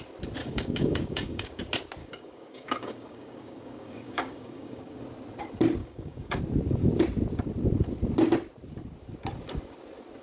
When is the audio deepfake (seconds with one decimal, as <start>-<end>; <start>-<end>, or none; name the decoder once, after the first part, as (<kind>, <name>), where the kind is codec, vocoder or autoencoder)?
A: 0.4-1.6 (codec, DAC); 2.0-5.0; 5.8-6.4